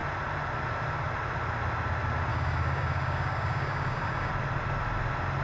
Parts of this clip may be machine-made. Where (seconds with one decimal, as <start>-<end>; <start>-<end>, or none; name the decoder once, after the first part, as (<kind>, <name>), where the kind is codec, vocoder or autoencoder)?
2.3-4.3 (codec, DAC)